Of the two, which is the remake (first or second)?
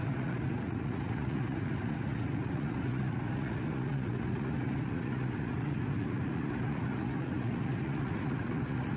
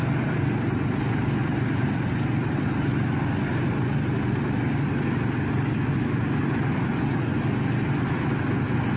first